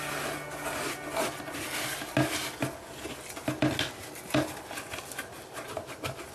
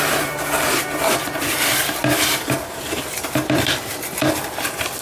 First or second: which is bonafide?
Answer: first